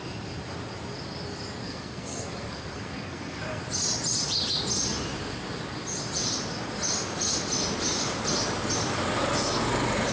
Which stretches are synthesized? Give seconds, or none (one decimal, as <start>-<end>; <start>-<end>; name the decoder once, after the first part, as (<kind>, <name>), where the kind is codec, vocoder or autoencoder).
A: 1.6-3.6 (codec, SNAC)